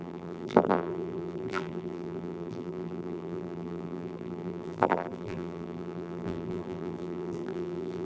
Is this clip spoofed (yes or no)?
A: yes